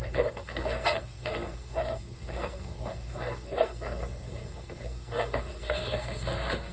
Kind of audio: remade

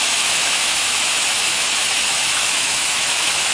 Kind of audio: remade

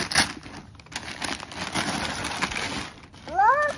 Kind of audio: recorded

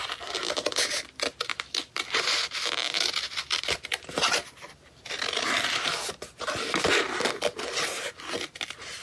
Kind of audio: recorded